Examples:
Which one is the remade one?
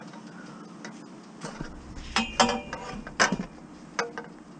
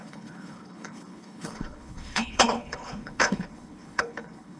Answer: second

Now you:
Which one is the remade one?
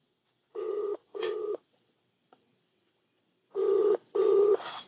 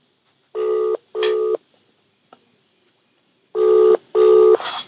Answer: first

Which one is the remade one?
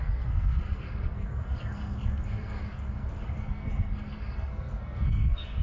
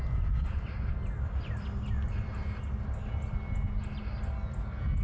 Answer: first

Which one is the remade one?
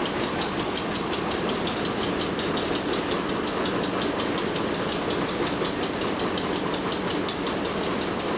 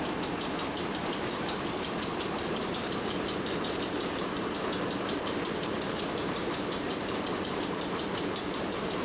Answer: second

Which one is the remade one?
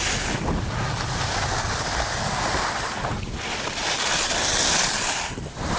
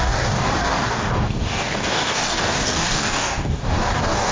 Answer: second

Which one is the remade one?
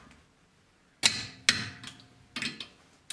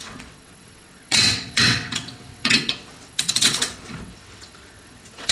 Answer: second